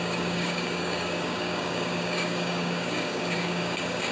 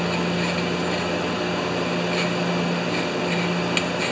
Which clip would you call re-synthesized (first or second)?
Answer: first